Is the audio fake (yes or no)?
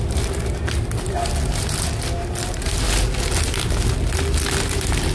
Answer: no